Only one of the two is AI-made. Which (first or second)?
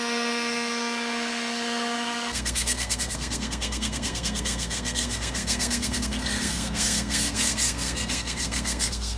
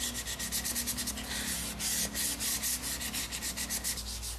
first